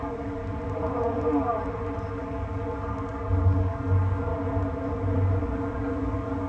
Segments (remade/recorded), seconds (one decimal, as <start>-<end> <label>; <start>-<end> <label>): 0.0-0.4 remade; 0.4-2.2 recorded; 2.2-4.3 remade; 4.3-5.4 recorded; 5.4-6.5 remade